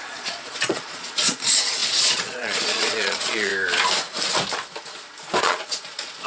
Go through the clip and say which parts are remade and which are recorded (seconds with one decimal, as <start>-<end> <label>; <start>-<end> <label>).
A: 0.0-3.5 remade; 3.5-5.4 recorded; 5.4-6.3 remade